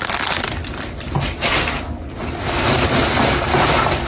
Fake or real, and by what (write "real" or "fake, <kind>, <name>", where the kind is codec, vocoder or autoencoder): real